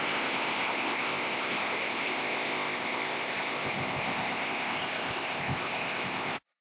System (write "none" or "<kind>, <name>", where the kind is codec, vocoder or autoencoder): codec, ZipCodec